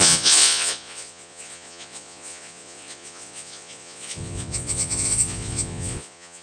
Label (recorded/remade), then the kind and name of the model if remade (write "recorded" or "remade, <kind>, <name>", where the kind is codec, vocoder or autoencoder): remade, vocoder, Vocos